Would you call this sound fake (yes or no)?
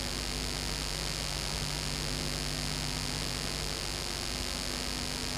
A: no